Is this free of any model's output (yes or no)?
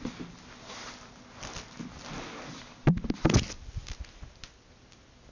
yes